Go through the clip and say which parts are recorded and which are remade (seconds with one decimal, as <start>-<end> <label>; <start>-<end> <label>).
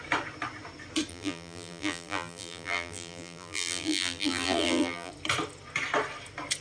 0.0-1.1 recorded; 1.1-5.1 remade; 5.1-6.6 recorded